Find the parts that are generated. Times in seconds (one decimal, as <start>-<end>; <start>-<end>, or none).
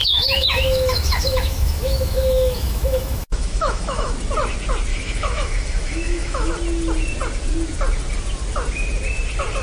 0.0-4.1; 4.9-6.5